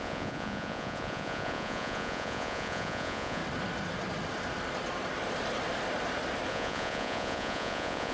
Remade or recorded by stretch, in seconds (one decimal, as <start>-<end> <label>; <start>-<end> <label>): 0.0-3.4 remade; 3.4-6.5 recorded; 6.5-8.1 remade